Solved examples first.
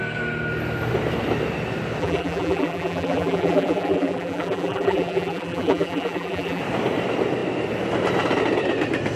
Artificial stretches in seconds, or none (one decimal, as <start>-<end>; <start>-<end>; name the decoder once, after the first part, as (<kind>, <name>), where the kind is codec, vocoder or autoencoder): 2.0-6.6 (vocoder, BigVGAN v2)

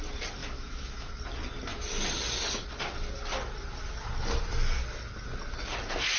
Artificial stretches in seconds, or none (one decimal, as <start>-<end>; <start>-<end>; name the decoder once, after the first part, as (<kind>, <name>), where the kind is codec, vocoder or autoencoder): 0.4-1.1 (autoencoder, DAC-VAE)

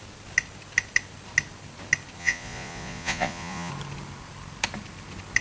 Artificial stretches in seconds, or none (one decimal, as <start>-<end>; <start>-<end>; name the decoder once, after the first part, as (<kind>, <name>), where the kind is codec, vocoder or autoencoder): 2.2-3.7 (vocoder, Vocos)